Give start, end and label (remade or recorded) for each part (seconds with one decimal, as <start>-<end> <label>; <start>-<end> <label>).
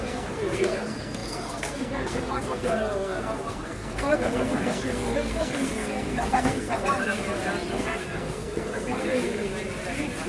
0.0-7.2 remade; 7.2-7.7 recorded; 7.7-9.5 remade; 9.5-10.3 recorded